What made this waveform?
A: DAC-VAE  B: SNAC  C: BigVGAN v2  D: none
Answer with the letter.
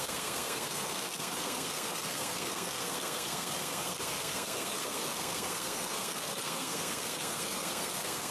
B